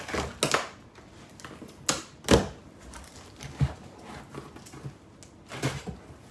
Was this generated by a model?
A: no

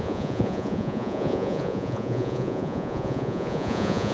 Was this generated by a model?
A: yes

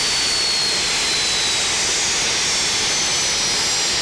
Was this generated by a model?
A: no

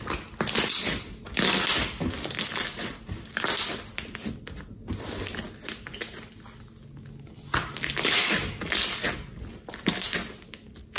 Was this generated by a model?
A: no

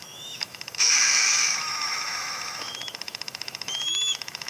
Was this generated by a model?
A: yes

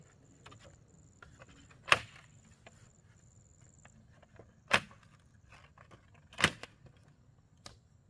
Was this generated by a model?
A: no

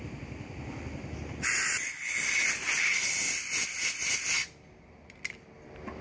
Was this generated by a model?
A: no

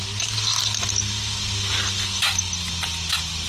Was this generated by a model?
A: no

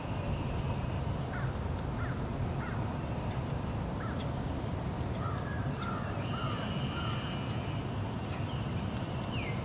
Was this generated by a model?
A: no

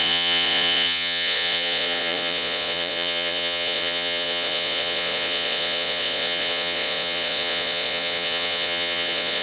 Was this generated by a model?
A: yes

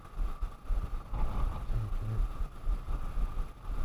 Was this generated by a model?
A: no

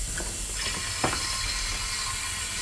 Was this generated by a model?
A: no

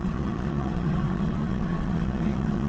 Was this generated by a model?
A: yes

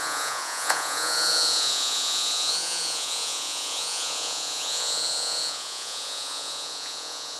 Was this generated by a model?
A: yes